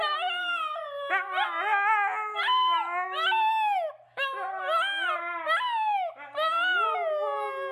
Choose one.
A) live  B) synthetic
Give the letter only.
A